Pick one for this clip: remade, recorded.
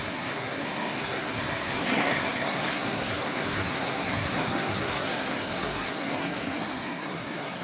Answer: remade